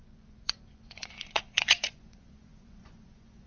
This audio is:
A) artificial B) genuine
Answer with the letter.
A